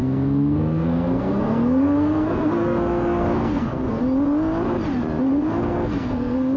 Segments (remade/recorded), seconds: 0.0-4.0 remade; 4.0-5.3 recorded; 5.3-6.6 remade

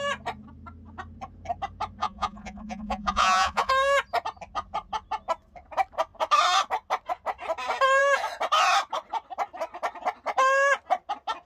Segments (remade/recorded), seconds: 0.0-2.0 recorded; 2.0-3.7 remade; 3.7-11.5 recorded

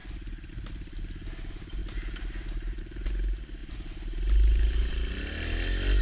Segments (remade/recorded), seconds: 0.0-0.5 remade; 0.5-3.6 recorded; 3.6-4.9 remade; 4.9-6.0 recorded